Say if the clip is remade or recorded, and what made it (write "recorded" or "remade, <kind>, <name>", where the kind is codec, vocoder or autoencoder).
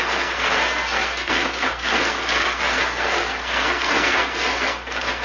remade, codec, SNAC